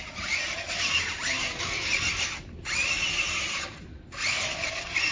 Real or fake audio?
fake